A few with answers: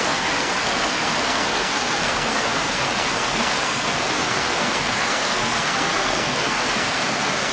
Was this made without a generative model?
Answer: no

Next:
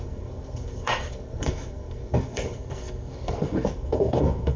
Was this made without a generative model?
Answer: no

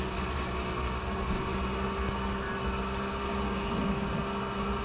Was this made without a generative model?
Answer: yes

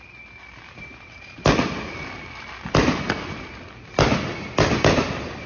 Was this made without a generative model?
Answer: yes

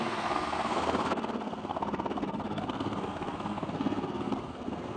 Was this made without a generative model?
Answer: no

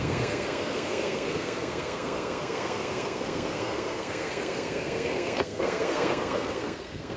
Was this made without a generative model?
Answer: no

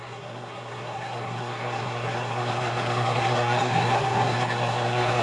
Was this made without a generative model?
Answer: no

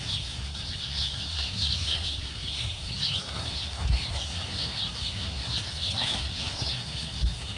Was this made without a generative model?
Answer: no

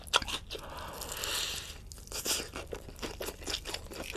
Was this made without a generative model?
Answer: yes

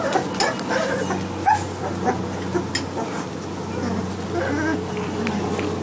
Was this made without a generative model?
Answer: yes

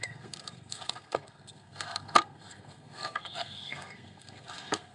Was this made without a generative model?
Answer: no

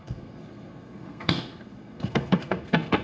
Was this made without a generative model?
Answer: no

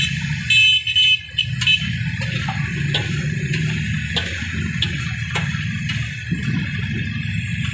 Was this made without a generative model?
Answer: yes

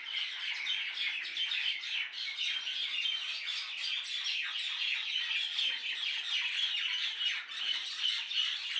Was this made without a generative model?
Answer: yes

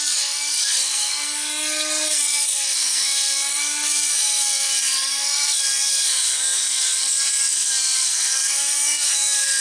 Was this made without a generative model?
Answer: no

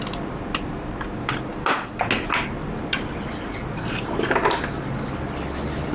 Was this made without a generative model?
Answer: yes